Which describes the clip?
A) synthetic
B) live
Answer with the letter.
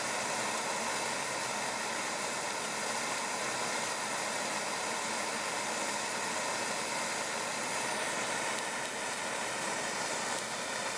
B